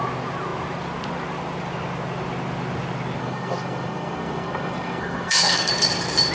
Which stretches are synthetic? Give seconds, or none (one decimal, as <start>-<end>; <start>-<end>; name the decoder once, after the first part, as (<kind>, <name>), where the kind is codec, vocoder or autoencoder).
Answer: 3.2-5.7 (codec, SNAC)